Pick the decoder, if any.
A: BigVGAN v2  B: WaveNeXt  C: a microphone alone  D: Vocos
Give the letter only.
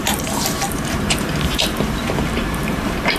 A